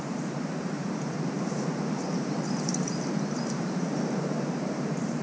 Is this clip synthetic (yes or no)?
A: yes